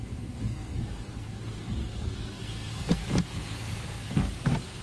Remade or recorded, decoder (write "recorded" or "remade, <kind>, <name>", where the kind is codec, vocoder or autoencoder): remade, codec, SNAC